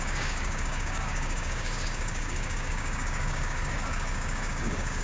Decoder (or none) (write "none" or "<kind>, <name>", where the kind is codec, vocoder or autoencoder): codec, DAC